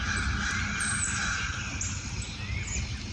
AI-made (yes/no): no